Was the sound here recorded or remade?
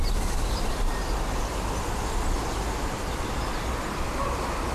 recorded